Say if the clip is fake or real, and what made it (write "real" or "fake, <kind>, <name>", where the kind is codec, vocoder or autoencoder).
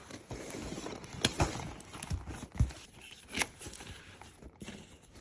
real